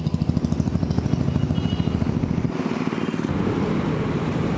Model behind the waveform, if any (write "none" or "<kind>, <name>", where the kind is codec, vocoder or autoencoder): none